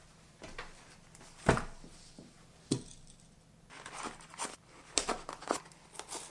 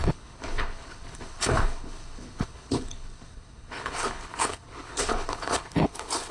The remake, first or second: second